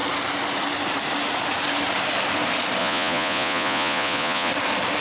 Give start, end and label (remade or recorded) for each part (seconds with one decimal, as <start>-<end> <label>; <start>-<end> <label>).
0.0-2.8 recorded; 2.8-4.5 remade; 4.5-5.0 recorded